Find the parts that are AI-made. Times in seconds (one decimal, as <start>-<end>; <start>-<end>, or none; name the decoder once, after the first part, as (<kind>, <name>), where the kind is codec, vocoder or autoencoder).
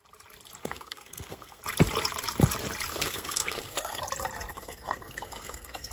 0.6-1.6 (codec, SNAC); 2.9-4.0; 4.5-5.9